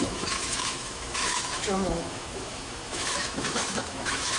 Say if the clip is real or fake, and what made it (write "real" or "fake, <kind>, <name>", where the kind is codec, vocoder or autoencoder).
fake, autoencoder, DAC-VAE